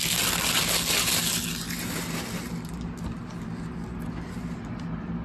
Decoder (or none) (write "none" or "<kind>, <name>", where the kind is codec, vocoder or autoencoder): none